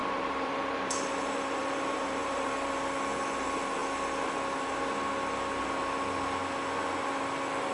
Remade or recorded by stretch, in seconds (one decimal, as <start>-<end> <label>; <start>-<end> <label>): 0.0-2.7 remade; 2.7-7.7 recorded